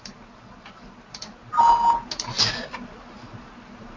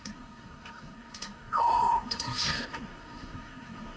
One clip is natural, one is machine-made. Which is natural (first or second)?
first